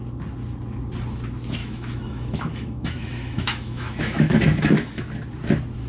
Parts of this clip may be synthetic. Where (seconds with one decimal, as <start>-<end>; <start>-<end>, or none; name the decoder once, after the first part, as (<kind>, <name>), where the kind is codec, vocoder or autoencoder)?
1.6-5.1 (autoencoder, DAC-VAE)